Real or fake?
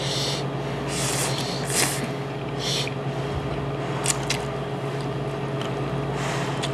real